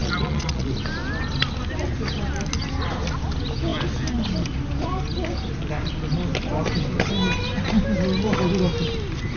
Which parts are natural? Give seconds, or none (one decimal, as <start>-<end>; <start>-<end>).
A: 0.7-9.4